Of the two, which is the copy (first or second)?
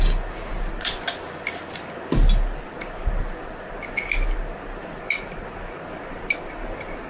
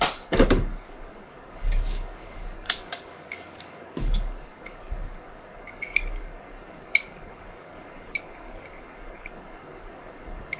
second